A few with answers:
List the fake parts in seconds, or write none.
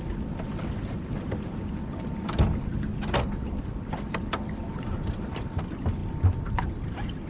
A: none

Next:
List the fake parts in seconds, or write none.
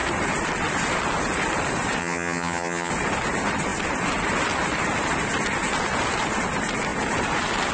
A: 2.0-2.9 (vocoder, HiFi-GAN)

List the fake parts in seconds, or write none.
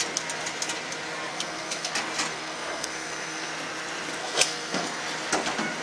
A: 1.3-1.9 (codec, SNAC); 2.3-3.5; 4.2-5.0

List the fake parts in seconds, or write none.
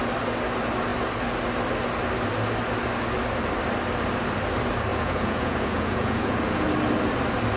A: 4.9-6.7 (vocoder, Vocos)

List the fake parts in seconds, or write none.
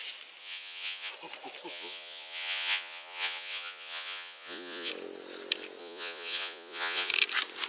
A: 0.4-1.1 (vocoder, Vocos); 1.7-4.9; 5.8-7.1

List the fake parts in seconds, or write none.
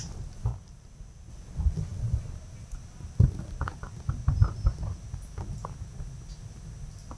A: none